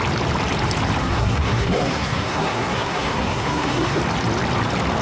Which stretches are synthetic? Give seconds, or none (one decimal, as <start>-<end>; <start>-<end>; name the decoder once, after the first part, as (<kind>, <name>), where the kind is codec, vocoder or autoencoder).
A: 1.0-4.0 (codec, SNAC)